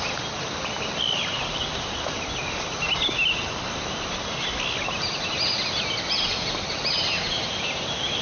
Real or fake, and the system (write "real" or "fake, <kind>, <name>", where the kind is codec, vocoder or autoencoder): real